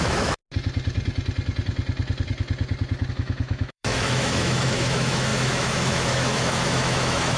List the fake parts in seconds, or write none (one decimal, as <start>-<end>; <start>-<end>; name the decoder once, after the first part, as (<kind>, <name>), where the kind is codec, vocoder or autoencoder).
0.0-0.4 (autoencoder, DAC-VAE); 3.1-7.4